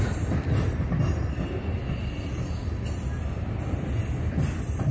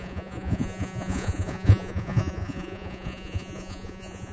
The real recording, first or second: first